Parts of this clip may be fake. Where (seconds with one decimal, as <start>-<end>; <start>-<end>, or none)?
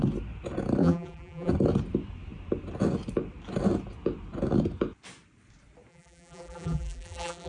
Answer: 0.8-1.5; 5.9-7.5